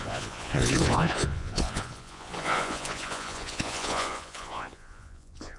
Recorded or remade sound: remade